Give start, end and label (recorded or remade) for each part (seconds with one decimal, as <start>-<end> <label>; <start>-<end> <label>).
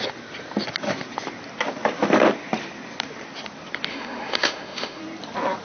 0.0-3.9 recorded; 3.9-5.0 remade; 5.0-5.6 recorded